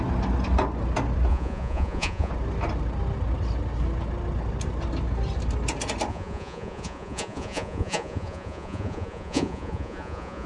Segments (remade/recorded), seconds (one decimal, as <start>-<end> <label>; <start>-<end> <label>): 0.0-1.3 recorded; 1.3-2.3 remade; 2.3-6.1 recorded; 6.1-10.5 remade